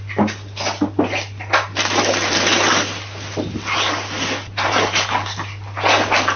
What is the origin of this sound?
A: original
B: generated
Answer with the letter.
A